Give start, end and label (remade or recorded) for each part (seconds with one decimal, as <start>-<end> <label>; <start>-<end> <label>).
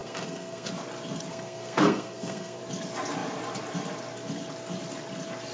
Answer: 0.0-0.7 remade; 0.7-1.3 recorded; 1.3-2.6 remade; 2.6-5.5 recorded